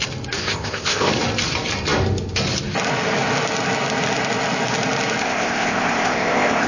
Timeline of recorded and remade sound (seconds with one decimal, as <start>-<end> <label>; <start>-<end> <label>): 0.0-0.4 recorded; 0.4-1.1 remade; 1.1-5.2 recorded; 5.2-6.7 remade